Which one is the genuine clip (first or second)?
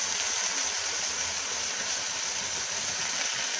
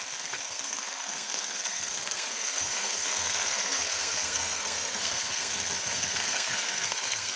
first